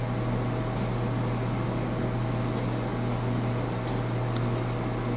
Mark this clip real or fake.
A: real